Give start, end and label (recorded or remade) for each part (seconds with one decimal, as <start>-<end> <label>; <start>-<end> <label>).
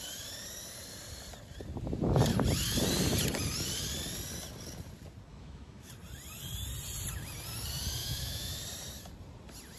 0.0-5.3 recorded; 5.3-5.9 remade; 5.9-8.0 recorded; 8.0-8.6 remade; 8.6-9.8 recorded